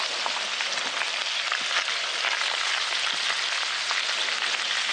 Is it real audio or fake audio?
real